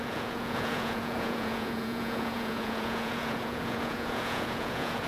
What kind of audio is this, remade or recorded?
remade